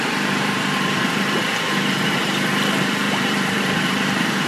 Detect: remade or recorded remade